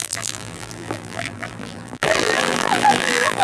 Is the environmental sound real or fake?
fake